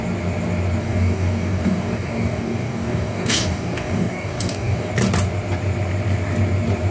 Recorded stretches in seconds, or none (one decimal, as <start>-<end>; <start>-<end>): 0.0-0.8; 4.9-6.9